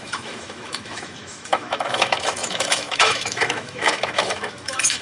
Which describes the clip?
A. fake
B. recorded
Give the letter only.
A